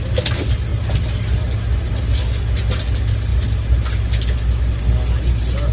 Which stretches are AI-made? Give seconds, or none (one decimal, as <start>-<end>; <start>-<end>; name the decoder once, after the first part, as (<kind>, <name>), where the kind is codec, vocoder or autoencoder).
none